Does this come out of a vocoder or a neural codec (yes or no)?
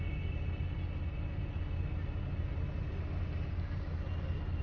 no